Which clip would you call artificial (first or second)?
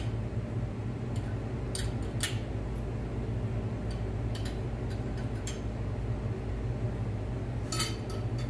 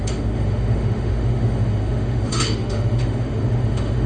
second